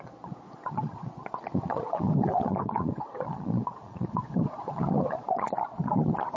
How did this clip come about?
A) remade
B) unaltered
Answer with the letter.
A